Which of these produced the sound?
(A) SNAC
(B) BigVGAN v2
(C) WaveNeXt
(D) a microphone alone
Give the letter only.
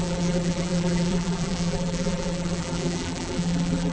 B